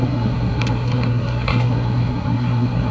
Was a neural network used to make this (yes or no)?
yes